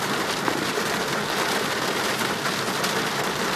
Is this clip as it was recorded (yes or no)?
yes